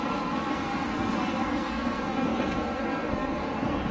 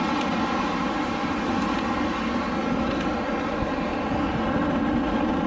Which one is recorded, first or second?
second